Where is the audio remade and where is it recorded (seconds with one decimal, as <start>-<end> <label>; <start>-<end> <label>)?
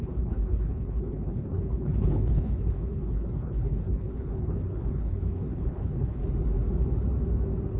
0.0-6.2 remade; 6.2-7.8 recorded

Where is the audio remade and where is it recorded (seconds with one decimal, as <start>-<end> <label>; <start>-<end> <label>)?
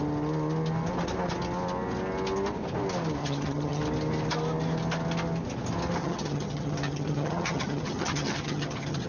0.0-3.2 recorded; 3.2-3.8 remade; 3.8-6.0 recorded; 6.0-9.1 remade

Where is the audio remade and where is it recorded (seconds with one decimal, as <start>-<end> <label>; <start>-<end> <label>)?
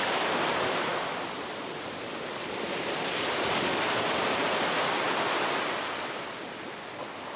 0.0-7.4 recorded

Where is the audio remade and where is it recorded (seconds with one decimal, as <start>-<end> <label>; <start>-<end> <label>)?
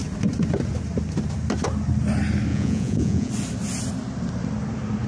0.0-2.5 recorded; 2.5-3.3 remade; 3.3-5.1 recorded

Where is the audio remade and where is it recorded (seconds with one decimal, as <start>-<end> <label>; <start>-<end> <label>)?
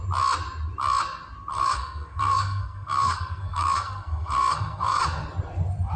0.0-1.5 recorded; 1.5-5.0 remade; 5.0-6.0 recorded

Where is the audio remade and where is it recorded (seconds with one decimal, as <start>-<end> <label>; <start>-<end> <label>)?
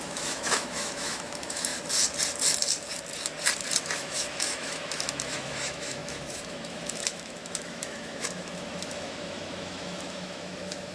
0.0-1.7 remade; 1.7-3.8 recorded; 3.8-10.9 remade